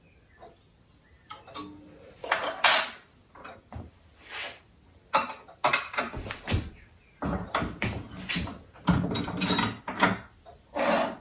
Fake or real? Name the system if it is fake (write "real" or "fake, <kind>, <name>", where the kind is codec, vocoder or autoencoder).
real